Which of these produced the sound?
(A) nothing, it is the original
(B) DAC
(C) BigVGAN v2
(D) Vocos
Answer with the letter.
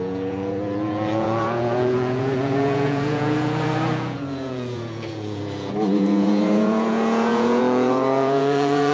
D